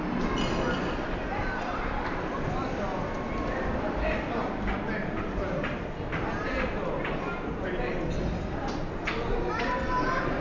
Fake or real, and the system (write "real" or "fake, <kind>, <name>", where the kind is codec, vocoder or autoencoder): real